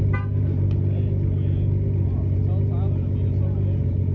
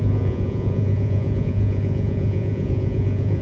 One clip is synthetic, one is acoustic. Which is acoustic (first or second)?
first